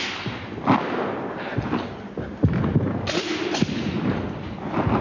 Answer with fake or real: real